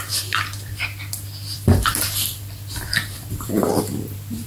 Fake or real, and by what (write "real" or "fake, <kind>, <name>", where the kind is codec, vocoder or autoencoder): fake, vocoder, BigVGAN v2